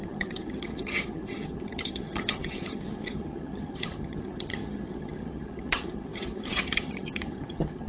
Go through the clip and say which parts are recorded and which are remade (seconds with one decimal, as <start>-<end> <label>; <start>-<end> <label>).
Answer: 0.0-7.9 remade